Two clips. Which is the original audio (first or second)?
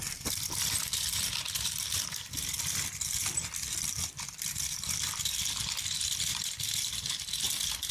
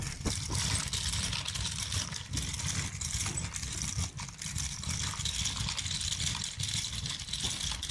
second